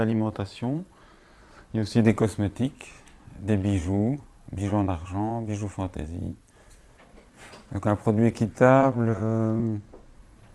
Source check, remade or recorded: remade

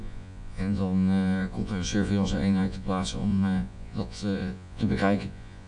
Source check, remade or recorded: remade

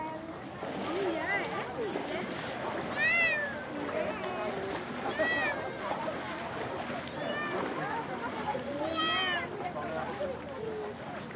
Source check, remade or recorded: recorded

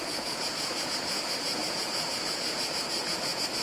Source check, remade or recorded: remade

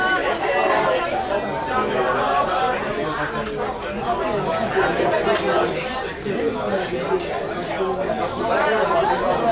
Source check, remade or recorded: recorded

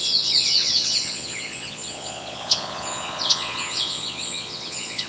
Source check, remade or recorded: remade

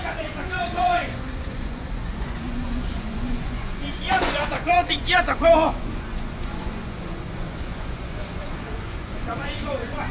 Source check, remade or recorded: remade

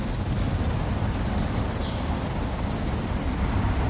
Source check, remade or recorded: recorded